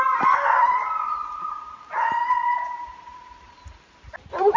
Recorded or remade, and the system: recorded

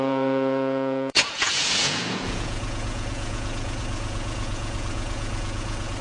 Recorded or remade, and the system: remade, vocoder, Vocos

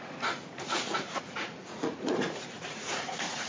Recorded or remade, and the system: remade, vocoder, Vocos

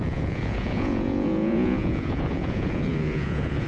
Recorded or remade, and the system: remade, vocoder, Vocos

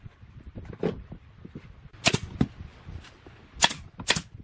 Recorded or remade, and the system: recorded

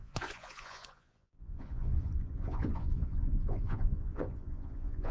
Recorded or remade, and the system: remade, vocoder, Vocos